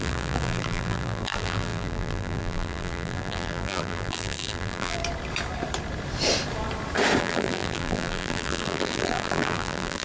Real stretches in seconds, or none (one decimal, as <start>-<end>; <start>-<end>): 5.0-7.2